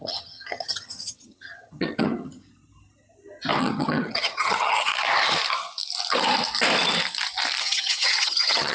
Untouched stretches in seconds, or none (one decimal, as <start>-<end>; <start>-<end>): 2.4-3.6; 4.9-7.6